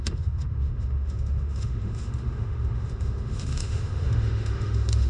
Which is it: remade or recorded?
remade